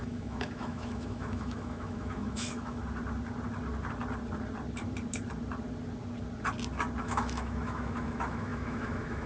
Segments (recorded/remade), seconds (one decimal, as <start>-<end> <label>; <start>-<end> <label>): 0.0-2.8 remade; 2.8-7.0 recorded; 7.0-9.3 remade